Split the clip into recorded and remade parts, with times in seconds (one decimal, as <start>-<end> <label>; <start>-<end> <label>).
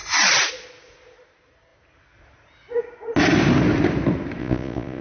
0.0-4.4 recorded; 4.4-5.0 remade